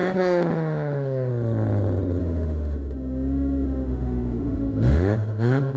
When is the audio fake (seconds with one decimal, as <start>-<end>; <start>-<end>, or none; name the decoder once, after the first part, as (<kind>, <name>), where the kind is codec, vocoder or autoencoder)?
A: 0.0-1.3 (autoencoder, DAC-VAE); 2.2-5.8